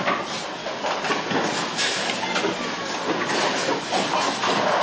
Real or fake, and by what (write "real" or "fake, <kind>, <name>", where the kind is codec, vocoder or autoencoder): real